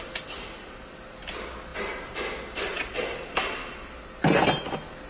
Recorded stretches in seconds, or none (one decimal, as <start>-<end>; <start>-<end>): 0.0-5.1